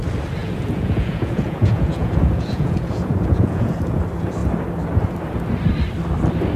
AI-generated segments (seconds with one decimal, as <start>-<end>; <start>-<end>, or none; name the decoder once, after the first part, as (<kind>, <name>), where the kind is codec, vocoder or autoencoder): 0.4-4.0 (vocoder, Vocos)